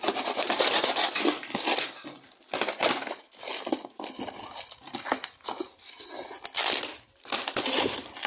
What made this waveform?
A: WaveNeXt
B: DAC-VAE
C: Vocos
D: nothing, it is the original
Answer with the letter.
D